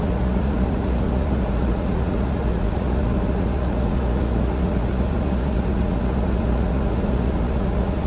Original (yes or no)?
no